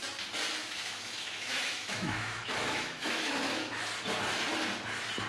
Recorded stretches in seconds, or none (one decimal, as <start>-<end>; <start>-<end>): 0.0-0.6; 3.8-5.3